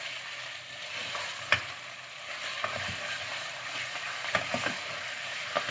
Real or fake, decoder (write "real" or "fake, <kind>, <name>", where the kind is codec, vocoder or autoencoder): real